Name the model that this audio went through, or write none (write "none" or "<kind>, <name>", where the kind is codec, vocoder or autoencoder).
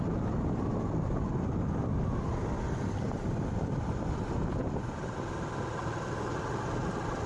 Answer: none